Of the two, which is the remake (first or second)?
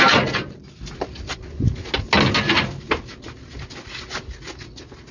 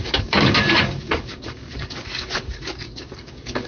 second